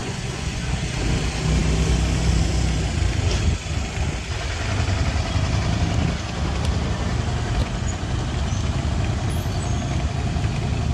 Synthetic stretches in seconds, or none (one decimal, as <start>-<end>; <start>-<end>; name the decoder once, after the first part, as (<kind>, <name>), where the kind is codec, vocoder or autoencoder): 0.0-1.0 (vocoder, Vocos); 7.6-8.1